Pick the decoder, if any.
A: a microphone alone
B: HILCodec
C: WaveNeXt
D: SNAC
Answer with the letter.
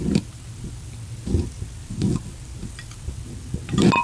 A